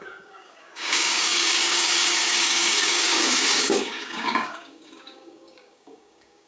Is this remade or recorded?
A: remade